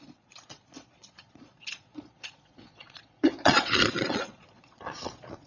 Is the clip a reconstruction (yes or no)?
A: yes